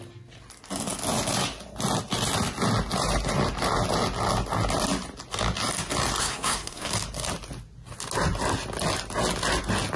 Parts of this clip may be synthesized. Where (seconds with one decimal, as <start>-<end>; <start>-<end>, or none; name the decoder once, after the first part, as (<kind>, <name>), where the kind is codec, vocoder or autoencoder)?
6.2-6.9 (codec, SNAC)